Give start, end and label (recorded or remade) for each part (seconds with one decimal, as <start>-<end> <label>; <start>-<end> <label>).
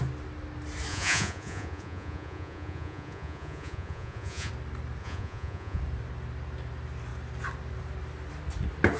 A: 0.0-0.9 recorded; 0.9-4.5 remade; 4.5-5.0 recorded; 5.0-5.8 remade; 5.8-9.0 recorded